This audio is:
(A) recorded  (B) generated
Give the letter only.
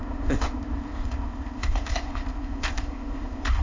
B